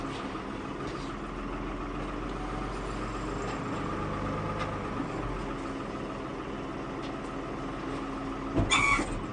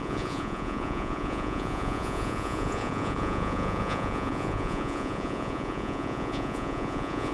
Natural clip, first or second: first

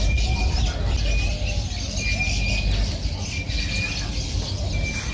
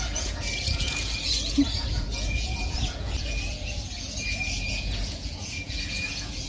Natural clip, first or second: first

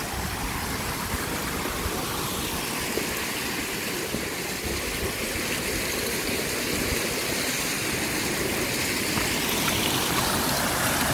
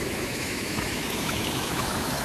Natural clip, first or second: first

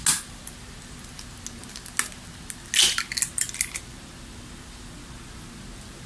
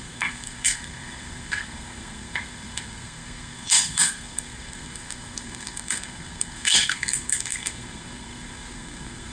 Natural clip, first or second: first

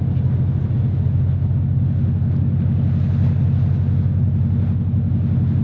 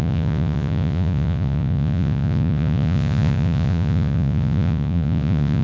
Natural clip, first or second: first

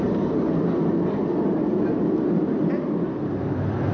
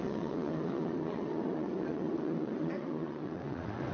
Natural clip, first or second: first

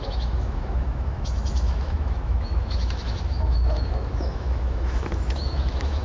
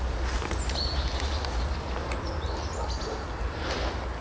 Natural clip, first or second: second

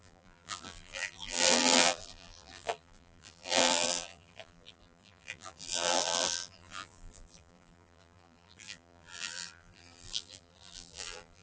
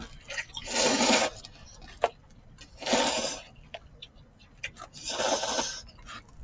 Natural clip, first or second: second